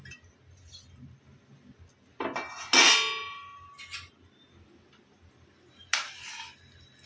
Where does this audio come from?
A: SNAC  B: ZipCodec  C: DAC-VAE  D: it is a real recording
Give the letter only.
D